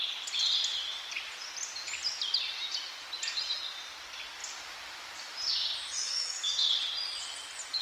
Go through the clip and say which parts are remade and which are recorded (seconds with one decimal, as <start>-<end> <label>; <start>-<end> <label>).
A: 0.0-5.9 recorded; 5.9-6.7 remade; 6.7-7.8 recorded

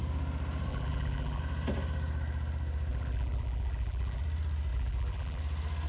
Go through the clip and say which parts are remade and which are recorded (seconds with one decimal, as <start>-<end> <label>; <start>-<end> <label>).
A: 0.0-0.7 recorded; 0.7-1.4 remade; 1.4-2.9 recorded; 2.9-4.2 remade; 4.2-4.7 recorded; 4.7-5.4 remade; 5.4-5.9 recorded

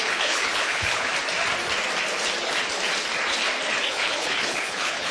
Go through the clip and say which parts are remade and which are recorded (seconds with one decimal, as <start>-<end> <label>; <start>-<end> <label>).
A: 0.0-1.1 remade; 1.1-3.9 recorded; 3.9-5.1 remade